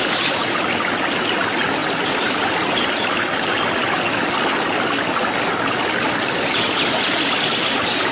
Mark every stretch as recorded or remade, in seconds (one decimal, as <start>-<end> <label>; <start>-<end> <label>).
0.0-8.1 recorded